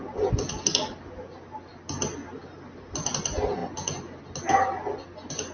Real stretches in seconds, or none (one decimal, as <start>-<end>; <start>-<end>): 0.0-5.5